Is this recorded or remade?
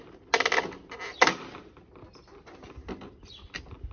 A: recorded